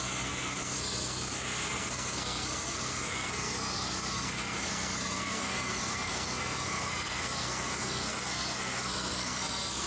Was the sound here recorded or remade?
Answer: remade